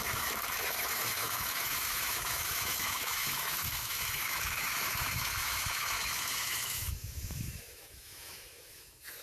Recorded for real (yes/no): no